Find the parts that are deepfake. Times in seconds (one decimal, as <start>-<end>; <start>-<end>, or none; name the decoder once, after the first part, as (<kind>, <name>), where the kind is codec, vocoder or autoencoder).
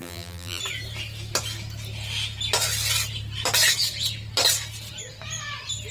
0.0-0.6 (vocoder, BigVGAN v2)